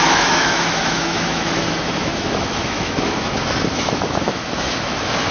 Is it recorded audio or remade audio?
remade